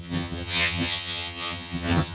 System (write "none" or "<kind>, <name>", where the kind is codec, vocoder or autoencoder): vocoder, HiFi-GAN